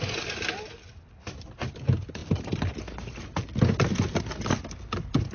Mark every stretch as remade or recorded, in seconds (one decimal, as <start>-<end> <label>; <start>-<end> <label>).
0.0-5.3 recorded